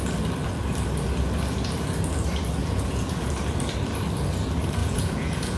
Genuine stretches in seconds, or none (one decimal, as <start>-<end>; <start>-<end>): 0.0-2.6; 3.3-4.8